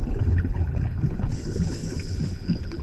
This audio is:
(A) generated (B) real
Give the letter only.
A